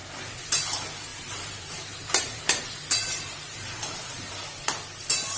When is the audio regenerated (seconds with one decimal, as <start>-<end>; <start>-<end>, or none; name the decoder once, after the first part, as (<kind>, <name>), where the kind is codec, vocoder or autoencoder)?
0.0-0.6 (vocoder, BigVGAN v2); 1.1-4.3